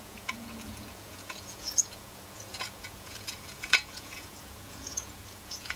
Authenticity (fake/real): fake